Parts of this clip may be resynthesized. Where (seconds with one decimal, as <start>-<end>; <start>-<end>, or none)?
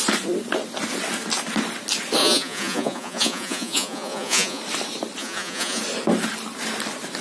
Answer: 2.2-4.6; 5.2-5.8